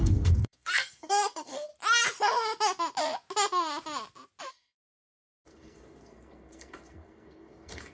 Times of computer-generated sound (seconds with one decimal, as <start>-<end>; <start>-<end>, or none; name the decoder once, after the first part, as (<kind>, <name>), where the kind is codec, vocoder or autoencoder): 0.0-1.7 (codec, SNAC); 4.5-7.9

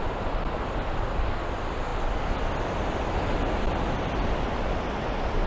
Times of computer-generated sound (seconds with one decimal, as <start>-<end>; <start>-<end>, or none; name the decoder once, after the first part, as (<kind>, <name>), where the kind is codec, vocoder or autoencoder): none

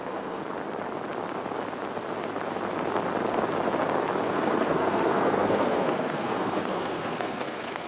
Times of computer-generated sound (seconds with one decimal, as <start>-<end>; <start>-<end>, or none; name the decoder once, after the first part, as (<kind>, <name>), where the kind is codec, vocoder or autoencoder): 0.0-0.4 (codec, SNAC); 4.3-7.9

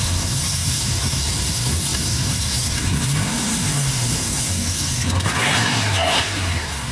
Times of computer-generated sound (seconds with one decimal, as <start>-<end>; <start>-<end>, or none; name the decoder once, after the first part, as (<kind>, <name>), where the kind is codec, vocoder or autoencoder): 0.0-6.9 (codec, SNAC)

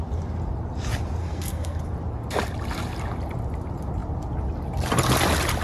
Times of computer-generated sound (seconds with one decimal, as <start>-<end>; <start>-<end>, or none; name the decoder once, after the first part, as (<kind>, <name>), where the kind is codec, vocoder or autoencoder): 1.2-1.8 (codec, SNAC)